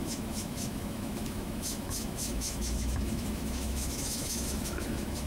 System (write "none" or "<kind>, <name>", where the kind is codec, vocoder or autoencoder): autoencoder, DAC-VAE